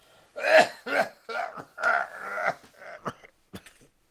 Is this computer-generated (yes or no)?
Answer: no